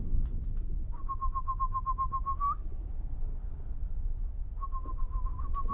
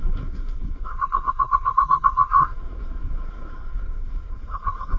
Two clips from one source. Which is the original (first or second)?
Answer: first